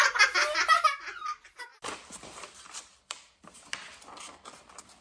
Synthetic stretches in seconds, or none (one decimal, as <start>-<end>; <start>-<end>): none